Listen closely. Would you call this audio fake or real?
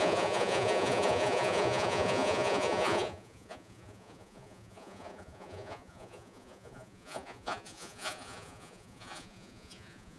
fake